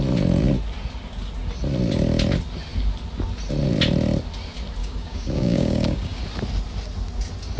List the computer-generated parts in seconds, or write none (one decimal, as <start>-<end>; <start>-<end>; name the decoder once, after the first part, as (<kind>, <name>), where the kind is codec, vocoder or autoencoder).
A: 4.8-6.2 (codec, DAC)